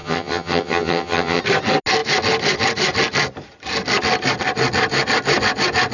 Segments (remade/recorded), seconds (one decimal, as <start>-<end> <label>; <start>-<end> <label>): 0.0-1.4 remade; 1.4-5.9 recorded